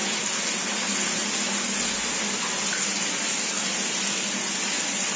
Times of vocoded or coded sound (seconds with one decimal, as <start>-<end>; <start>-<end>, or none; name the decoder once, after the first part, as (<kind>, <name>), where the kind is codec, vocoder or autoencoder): none